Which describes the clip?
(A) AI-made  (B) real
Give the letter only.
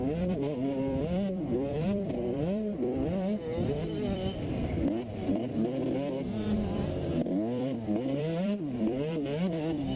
A